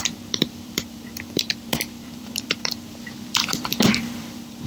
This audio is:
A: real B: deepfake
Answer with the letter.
B